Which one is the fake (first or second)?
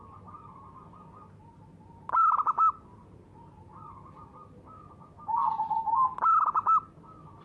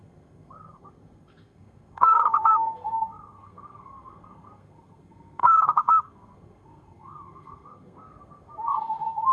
second